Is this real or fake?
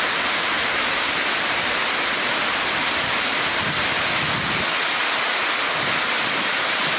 real